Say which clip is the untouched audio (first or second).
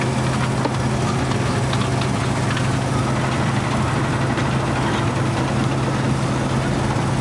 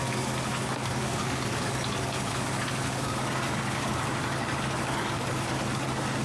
first